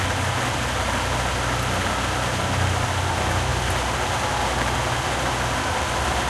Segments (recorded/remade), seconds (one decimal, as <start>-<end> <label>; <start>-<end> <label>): 0.0-6.3 recorded